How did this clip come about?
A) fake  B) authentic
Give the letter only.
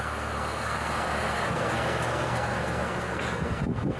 A